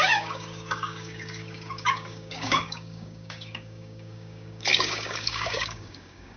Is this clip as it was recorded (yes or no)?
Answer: no